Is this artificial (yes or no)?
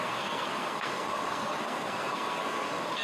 yes